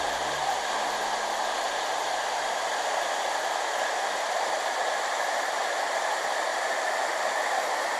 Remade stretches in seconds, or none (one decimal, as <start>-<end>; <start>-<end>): 6.5-8.0